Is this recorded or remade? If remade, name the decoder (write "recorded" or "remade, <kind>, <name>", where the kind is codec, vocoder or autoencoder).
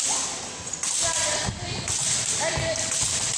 recorded